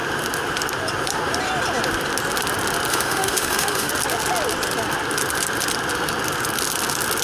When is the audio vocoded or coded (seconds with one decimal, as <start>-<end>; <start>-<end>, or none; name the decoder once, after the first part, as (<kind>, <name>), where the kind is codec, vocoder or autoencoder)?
2.9-3.9 (autoencoder, DAC-VAE)